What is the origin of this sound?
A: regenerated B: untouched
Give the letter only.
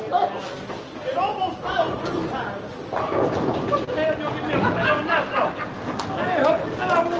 B